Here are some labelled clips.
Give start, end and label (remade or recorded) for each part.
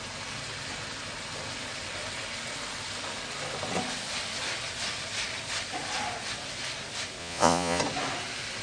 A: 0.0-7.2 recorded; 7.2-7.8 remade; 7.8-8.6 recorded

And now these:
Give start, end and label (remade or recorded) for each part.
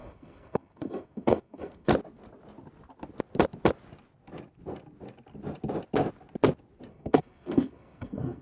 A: 0.0-1.9 remade; 1.9-6.9 recorded; 6.9-8.4 remade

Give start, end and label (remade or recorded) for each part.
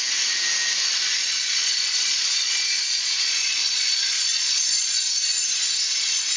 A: 0.0-1.2 recorded; 1.2-5.0 remade; 5.0-6.4 recorded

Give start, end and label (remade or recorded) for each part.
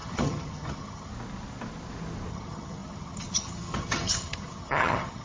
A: 0.0-1.1 remade; 1.1-2.3 recorded; 2.3-5.2 remade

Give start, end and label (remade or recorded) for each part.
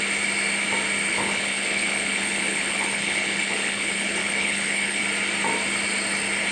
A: 0.0-1.1 recorded; 1.1-5.0 remade; 5.0-6.5 recorded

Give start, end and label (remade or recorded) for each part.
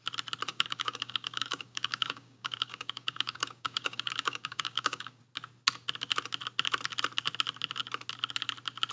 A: 0.0-0.5 recorded; 0.5-5.2 remade; 5.2-8.9 recorded